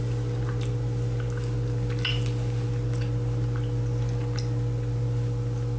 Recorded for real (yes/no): yes